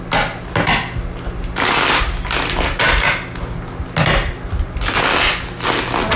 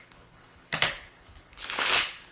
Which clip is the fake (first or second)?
second